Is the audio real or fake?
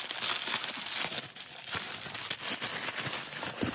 real